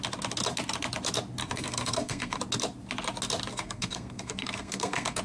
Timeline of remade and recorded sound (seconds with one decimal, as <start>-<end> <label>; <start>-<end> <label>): 0.0-1.4 recorded; 1.4-2.4 remade; 2.4-3.5 recorded; 3.5-5.2 remade